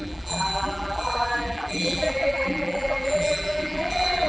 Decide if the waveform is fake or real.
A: fake